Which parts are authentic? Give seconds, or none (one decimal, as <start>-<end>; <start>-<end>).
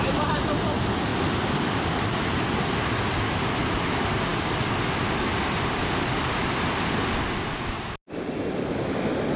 0.0-1.1; 2.9-4.3; 5.0-9.4